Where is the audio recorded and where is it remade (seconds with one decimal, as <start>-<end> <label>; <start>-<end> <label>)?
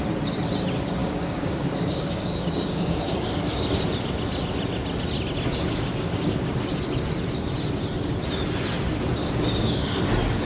0.0-1.0 recorded; 1.0-3.6 remade; 3.6-5.5 recorded; 5.5-6.8 remade; 6.8-9.2 recorded; 9.2-10.0 remade; 10.0-10.5 recorded